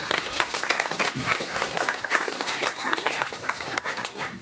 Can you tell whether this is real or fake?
fake